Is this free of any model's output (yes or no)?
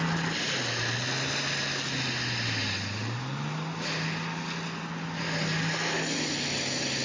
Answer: yes